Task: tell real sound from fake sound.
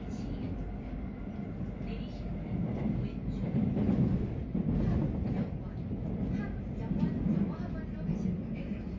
real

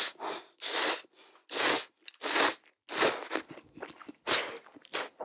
real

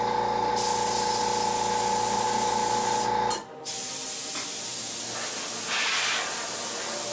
real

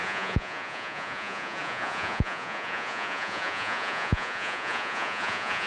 fake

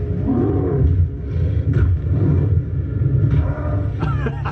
real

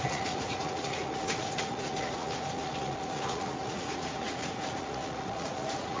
fake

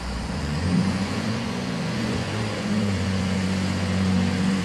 fake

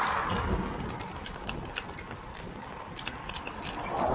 real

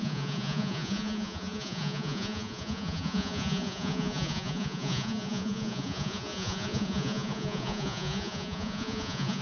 fake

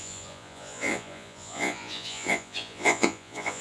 fake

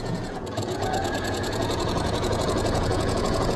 fake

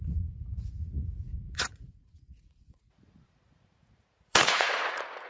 fake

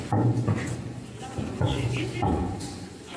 fake